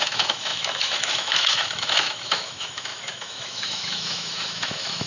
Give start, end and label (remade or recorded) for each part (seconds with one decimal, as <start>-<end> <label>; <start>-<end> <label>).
0.0-5.1 remade